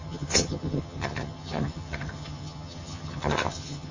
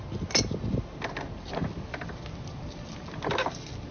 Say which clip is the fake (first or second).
first